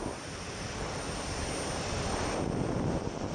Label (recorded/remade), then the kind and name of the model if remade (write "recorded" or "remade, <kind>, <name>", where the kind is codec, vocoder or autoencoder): recorded